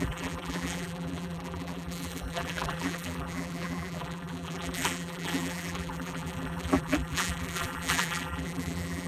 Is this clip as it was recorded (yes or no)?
no